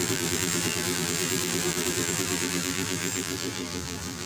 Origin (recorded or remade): remade